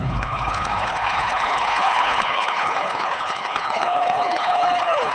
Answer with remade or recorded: remade